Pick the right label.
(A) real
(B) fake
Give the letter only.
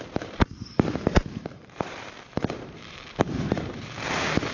B